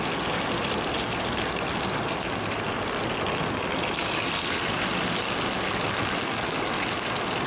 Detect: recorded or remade recorded